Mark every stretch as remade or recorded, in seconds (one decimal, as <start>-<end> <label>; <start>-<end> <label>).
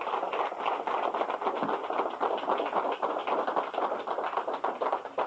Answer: 0.0-5.3 recorded